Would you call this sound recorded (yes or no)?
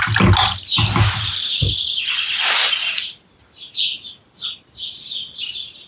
yes